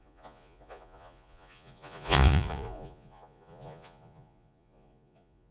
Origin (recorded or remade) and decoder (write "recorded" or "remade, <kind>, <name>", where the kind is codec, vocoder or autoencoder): remade, vocoder, Vocos